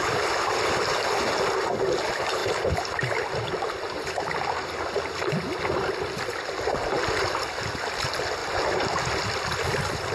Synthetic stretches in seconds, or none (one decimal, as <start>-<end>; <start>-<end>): 2.4-6.2; 8.4-9.4